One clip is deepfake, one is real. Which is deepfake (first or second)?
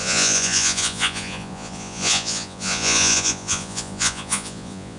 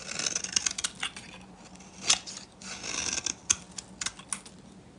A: first